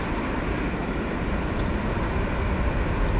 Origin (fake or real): real